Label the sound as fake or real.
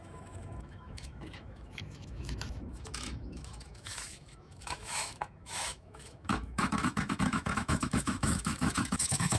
fake